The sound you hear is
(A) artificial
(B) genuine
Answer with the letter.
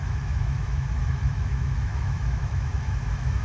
A